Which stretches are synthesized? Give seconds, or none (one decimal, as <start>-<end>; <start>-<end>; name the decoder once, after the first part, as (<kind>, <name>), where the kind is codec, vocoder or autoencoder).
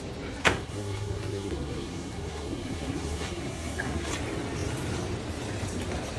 0.4-4.1 (codec, SNAC)